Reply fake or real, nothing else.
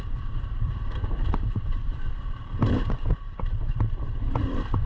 fake